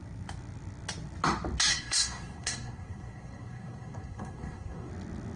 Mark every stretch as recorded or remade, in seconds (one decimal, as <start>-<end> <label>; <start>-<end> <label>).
0.0-1.7 recorded; 1.7-4.9 remade; 4.9-5.4 recorded